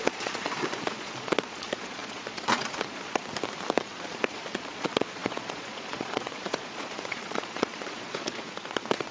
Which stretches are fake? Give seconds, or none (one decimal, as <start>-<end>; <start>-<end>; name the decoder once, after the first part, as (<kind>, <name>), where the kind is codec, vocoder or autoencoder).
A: 0.0-3.2 (vocoder, Vocos); 3.8-9.1